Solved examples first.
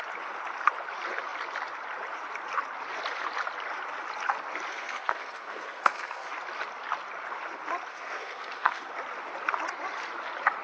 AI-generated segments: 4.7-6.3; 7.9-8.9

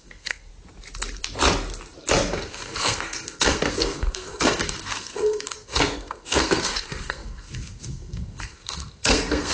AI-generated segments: 0.0-0.5; 2.3-9.5

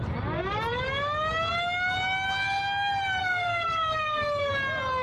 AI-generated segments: 3.2-4.5

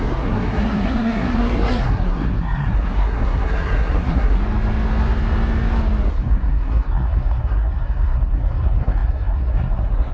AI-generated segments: 0.0-4.4; 6.1-10.1